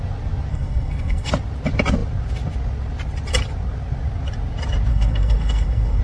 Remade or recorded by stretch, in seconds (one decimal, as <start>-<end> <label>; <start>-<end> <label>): 0.0-0.5 recorded; 0.5-1.3 remade; 1.3-4.9 recorded; 4.9-6.0 remade